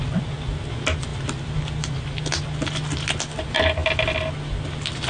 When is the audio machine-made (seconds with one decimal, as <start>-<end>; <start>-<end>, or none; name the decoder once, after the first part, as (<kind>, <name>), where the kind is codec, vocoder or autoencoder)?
none